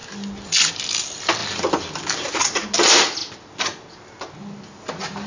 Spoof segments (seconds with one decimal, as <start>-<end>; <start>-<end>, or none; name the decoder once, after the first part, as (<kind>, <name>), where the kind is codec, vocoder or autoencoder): none